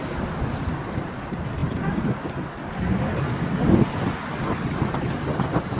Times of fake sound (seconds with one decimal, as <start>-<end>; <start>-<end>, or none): none